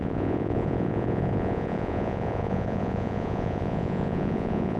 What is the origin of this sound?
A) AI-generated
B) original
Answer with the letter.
A